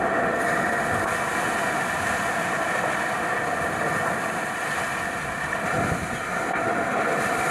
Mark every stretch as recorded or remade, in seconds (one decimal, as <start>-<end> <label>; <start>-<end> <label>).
0.0-7.5 recorded